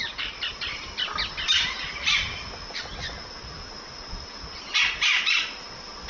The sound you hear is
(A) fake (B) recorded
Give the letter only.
B